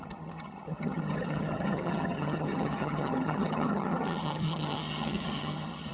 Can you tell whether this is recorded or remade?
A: remade